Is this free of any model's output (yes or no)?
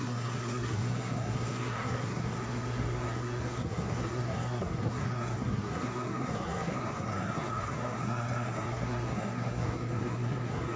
no